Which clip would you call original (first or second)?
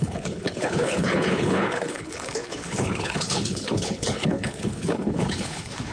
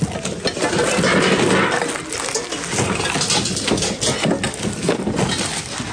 second